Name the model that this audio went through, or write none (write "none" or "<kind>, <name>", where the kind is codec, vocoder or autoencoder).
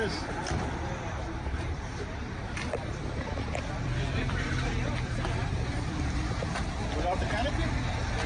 vocoder, BigVGAN v2